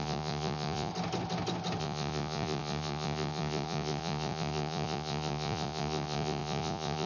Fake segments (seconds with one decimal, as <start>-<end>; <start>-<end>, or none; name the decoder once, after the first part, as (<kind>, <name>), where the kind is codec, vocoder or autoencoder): 0.0-0.9 (vocoder, Vocos); 1.8-7.1